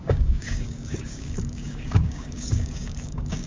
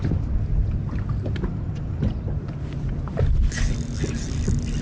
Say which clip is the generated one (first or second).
first